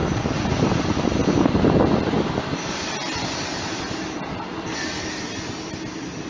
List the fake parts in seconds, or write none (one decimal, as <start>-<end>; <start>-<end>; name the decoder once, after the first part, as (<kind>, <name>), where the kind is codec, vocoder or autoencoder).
none